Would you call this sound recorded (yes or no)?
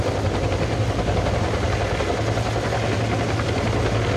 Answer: yes